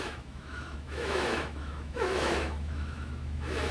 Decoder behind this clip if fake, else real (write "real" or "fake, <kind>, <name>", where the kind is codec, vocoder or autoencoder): fake, autoencoder, DAC-VAE